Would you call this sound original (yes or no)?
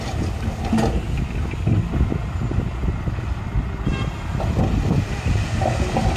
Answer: yes